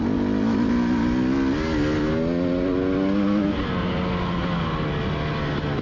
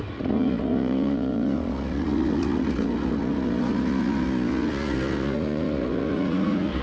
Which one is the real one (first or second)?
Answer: first